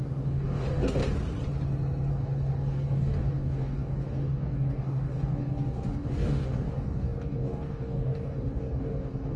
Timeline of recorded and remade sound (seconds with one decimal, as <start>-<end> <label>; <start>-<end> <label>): 0.0-1.0 remade; 1.0-2.1 recorded; 2.1-9.4 remade